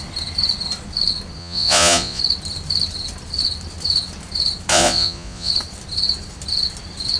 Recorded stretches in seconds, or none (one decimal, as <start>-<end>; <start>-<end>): 0.0-1.4; 2.2-4.7; 5.5-7.2